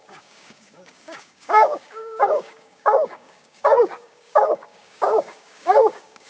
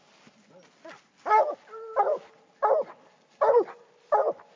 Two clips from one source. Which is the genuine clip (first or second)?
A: second